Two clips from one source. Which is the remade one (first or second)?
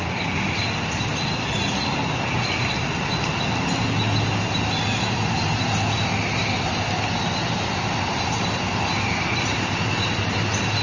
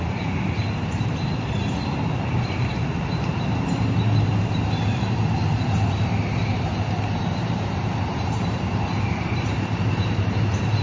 second